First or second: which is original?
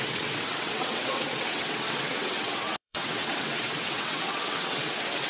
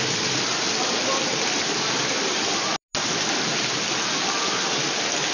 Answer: second